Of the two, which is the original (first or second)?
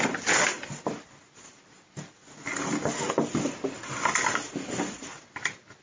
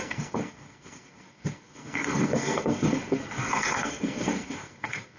first